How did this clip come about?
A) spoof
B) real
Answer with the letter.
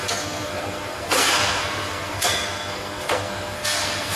A